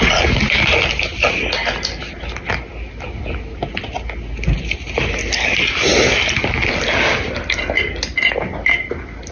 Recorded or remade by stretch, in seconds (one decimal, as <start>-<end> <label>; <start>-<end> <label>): 0.0-9.3 recorded